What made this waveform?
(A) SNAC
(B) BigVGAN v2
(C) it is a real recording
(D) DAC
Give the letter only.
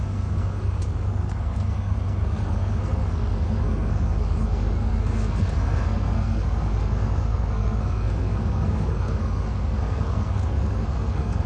A